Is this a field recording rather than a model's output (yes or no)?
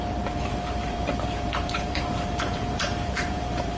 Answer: no